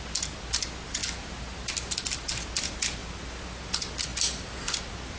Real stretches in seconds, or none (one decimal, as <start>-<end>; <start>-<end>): 0.0-5.2